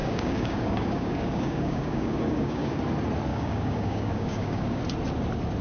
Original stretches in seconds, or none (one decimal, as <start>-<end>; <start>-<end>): 2.8-3.3; 4.8-5.6